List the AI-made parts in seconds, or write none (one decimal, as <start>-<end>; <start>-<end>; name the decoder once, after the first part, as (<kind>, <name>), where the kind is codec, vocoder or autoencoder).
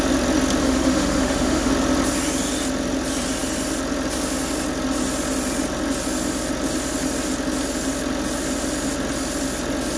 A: 0.6-1.7 (autoencoder, DAC-VAE)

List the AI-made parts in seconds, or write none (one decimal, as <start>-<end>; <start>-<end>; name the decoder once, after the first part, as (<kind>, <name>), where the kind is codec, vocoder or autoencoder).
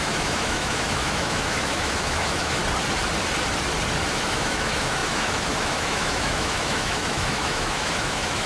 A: 0.0-2.6 (autoencoder, DAC-VAE); 4.1-8.5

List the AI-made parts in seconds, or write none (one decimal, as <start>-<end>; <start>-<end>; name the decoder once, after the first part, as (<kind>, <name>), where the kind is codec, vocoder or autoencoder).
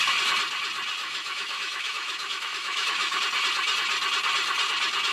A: 1.0-3.2 (autoencoder, DAC-VAE)